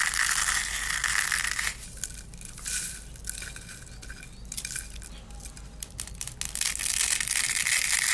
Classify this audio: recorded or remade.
recorded